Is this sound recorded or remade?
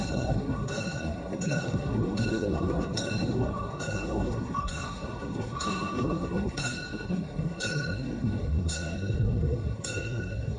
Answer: remade